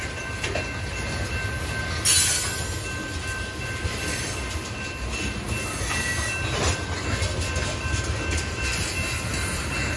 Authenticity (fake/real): real